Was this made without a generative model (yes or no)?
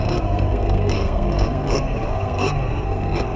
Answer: no